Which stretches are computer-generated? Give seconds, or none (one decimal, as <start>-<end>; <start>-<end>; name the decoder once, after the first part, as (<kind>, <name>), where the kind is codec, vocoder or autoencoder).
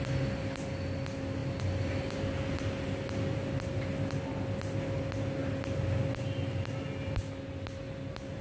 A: none